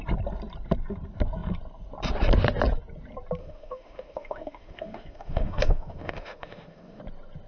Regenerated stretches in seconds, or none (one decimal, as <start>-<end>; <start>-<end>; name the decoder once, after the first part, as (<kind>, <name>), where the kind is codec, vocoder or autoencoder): 3.4-7.0 (autoencoder, DAC-VAE)